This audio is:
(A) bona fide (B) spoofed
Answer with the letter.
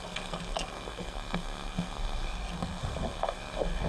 B